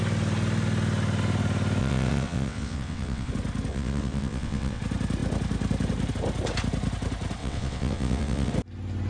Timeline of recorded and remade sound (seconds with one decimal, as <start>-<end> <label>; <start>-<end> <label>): 0.0-1.8 recorded; 1.8-3.3 remade; 3.3-3.7 recorded; 3.7-4.8 remade; 4.8-7.4 recorded; 7.4-8.5 remade; 8.5-9.1 recorded